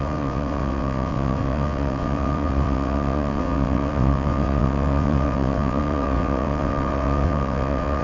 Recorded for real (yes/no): no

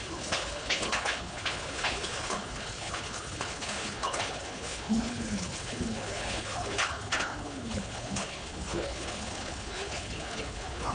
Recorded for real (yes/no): no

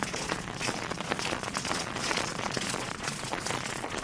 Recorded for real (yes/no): no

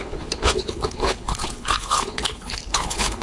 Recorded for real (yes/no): no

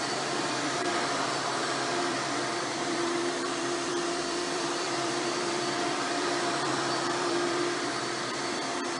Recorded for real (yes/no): no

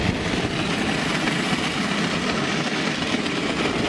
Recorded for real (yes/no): yes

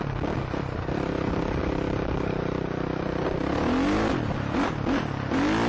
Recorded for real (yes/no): yes